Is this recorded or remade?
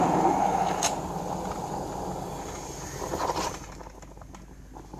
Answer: recorded